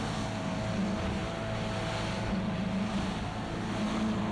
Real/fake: real